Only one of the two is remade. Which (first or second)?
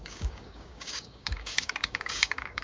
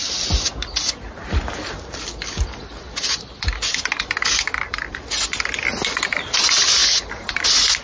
first